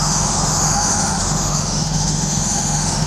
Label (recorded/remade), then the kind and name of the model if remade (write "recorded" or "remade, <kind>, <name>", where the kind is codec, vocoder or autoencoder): remade, autoencoder, DAC-VAE